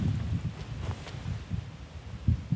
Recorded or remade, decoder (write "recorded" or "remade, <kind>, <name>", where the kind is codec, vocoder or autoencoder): recorded